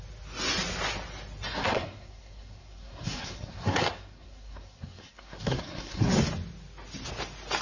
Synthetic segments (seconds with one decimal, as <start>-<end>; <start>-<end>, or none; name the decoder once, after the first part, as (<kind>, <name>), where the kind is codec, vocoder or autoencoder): 1.5-6.1 (codec, SNAC)